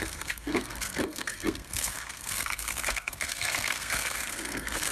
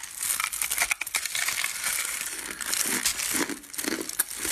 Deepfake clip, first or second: first